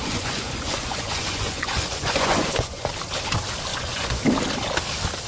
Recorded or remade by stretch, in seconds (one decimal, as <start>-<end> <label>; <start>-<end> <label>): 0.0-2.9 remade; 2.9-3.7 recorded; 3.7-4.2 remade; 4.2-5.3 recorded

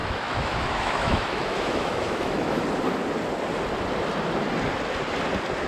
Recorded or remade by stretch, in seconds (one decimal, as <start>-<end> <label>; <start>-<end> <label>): 0.0-2.6 remade; 2.6-5.7 recorded

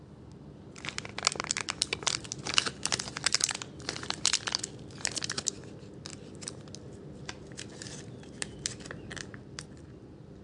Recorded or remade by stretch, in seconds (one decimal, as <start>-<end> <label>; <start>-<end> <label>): 0.0-1.1 remade; 1.1-2.4 recorded; 2.4-6.1 remade; 6.1-7.2 recorded; 7.2-10.4 remade

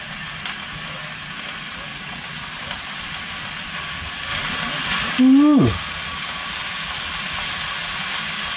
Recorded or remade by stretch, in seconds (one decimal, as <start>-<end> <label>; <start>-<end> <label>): 0.0-1.9 recorded; 1.9-2.5 remade; 2.5-8.6 recorded